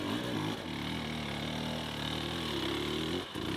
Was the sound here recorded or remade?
recorded